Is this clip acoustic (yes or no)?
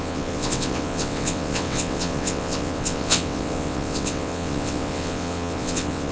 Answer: no